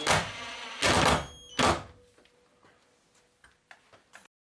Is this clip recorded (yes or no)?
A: yes